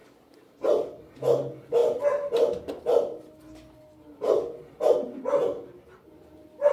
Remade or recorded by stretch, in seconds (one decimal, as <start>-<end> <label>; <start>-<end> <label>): 0.0-6.7 recorded